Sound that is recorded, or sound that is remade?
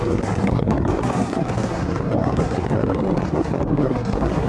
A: remade